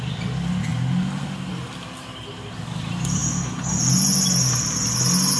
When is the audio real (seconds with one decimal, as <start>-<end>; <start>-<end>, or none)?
0.0-5.4